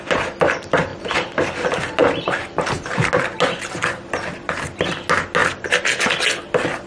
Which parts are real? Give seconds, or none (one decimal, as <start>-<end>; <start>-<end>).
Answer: 0.0-0.9; 1.5-2.0; 3.1-6.9